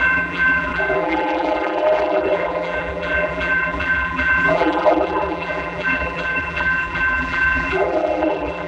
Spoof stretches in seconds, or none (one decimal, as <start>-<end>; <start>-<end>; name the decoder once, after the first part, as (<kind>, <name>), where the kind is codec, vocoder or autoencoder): 0.0-8.7 (vocoder, BigVGAN v2)